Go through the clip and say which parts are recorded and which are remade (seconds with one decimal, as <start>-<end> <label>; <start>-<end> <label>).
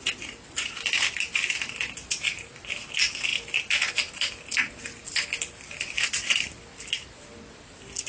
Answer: 0.0-8.1 recorded